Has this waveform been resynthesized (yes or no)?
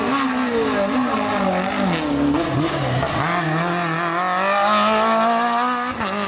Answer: no